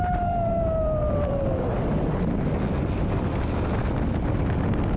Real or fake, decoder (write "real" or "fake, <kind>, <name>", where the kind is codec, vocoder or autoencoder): real